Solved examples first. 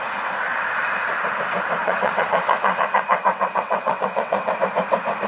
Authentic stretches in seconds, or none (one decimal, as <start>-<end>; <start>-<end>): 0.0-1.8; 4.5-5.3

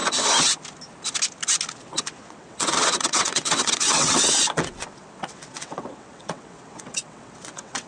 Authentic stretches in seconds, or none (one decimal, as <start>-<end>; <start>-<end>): 0.0-1.8

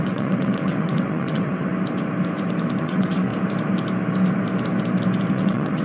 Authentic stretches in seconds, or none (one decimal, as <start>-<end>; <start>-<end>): 1.7-2.8; 3.3-5.3

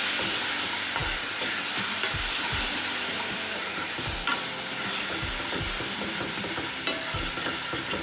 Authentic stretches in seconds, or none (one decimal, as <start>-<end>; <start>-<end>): 0.0-8.0